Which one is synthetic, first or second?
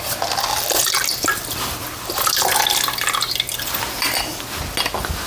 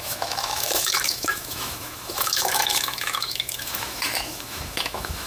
second